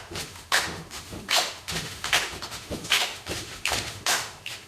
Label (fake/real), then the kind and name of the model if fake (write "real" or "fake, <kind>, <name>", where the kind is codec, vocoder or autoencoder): fake, autoencoder, DAC-VAE